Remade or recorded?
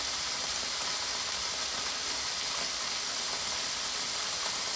remade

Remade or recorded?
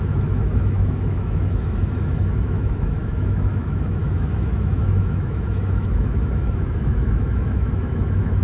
remade